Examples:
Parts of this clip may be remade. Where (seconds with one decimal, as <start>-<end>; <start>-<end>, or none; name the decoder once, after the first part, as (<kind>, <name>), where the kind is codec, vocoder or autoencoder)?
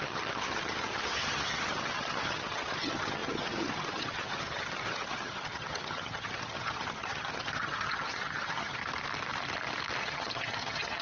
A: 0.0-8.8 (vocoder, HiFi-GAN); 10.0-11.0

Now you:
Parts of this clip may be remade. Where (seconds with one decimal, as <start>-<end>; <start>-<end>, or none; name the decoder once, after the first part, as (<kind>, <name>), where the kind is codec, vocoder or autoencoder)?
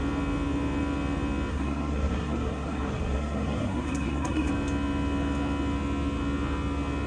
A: 1.5-4.5 (codec, SNAC)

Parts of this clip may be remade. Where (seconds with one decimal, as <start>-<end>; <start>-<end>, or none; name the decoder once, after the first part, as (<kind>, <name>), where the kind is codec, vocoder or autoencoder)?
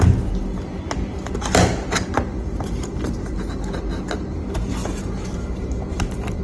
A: 2.3-3.6 (vocoder, BigVGAN v2); 4.8-6.4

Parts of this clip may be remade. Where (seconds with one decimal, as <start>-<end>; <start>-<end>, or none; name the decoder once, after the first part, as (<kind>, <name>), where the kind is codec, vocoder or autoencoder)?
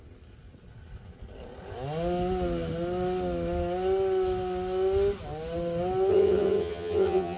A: 6.1-7.4 (vocoder, HiFi-GAN)